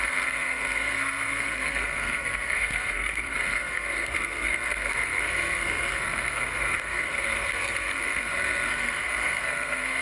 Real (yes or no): no